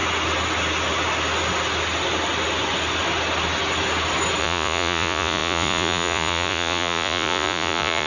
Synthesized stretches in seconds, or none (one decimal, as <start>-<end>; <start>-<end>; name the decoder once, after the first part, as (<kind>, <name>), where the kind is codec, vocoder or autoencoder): 4.4-8.1 (vocoder, Vocos)